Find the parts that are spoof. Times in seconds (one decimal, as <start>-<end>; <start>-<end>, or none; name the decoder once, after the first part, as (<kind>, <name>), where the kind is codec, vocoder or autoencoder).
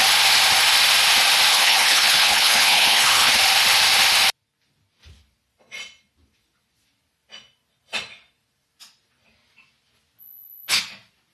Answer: 1.5-3.3 (codec, HILCodec); 10.2-10.8